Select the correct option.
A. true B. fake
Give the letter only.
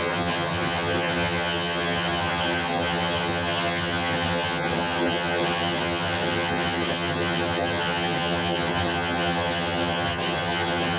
B